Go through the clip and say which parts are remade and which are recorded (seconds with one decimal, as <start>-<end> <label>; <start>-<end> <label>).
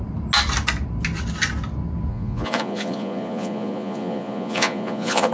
0.0-2.1 recorded; 2.1-5.3 remade